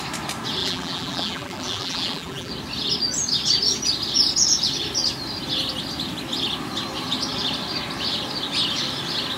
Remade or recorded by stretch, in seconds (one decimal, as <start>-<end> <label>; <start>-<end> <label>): 0.0-0.6 recorded; 0.6-2.5 remade; 2.5-9.4 recorded

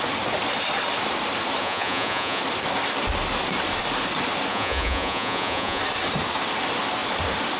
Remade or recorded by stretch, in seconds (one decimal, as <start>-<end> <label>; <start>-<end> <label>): 0.0-1.6 recorded; 1.6-2.4 remade; 2.4-4.5 recorded; 4.5-5.8 remade; 5.8-7.6 recorded

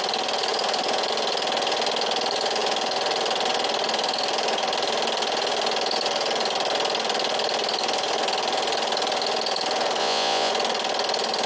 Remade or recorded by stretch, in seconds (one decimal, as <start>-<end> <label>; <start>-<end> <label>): 0.0-10.0 recorded; 10.0-10.5 remade; 10.5-11.5 recorded

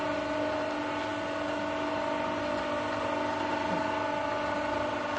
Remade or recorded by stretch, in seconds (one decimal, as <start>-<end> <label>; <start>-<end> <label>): 0.0-5.2 recorded